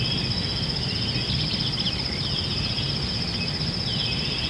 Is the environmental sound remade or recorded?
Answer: recorded